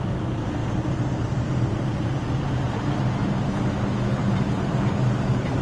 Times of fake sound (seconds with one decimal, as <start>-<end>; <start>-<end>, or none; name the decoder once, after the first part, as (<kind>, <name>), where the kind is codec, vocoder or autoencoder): 3.2-3.7 (vocoder, BigVGAN v2); 4.2-5.6